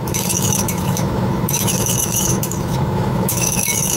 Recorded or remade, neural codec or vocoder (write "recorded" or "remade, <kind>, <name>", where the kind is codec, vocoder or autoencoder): remade, autoencoder, DAC-VAE